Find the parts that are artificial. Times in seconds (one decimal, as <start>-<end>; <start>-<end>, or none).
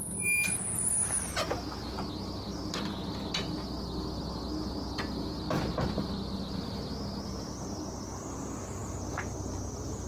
none